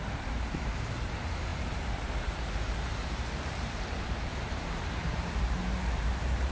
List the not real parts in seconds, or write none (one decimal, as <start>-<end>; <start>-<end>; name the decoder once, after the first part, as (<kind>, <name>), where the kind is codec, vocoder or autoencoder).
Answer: 0.0-6.5 (vocoder, BigVGAN v2)